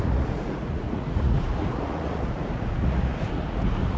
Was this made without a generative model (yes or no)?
no